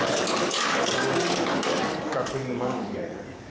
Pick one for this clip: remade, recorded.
remade